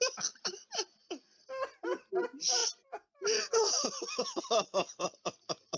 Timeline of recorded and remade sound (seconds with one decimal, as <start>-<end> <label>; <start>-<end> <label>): 0.0-5.8 recorded

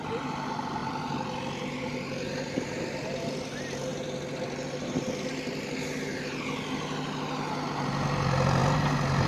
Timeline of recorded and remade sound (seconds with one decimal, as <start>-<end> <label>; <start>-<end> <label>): 0.0-9.3 recorded

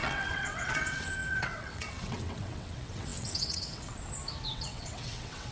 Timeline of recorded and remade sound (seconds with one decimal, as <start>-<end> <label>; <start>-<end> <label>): 0.0-4.0 remade; 4.0-4.5 recorded; 4.5-5.5 remade

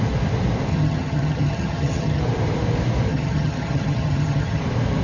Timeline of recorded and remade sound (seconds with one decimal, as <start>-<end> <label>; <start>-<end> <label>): 0.0-0.7 recorded; 0.7-2.2 remade; 2.2-3.1 recorded; 3.1-4.6 remade; 4.6-5.0 recorded

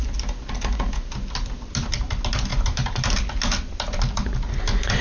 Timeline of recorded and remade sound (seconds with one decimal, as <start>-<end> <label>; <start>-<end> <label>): 0.0-2.5 recorded; 2.5-3.2 remade; 3.2-5.0 recorded

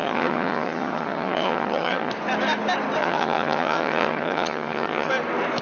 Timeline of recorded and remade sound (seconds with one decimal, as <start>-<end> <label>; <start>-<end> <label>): 0.0-2.1 remade; 2.1-3.0 recorded; 3.0-5.1 remade; 5.1-5.6 recorded